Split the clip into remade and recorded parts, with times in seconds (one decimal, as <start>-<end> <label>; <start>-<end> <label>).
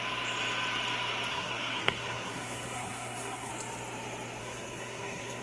0.0-1.3 recorded; 1.3-3.5 remade; 3.5-4.4 recorded; 4.4-5.4 remade